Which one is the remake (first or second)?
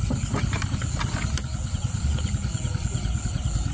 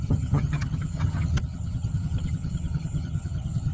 second